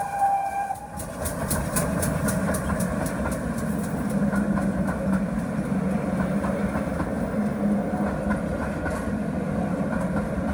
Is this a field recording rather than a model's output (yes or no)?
yes